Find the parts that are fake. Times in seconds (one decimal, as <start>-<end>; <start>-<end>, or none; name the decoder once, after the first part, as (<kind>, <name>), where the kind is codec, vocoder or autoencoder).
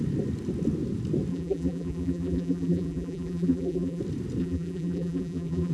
1.3-4.0 (vocoder, BigVGAN v2); 4.4-5.7